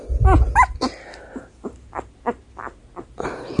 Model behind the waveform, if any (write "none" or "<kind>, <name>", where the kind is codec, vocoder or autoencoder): none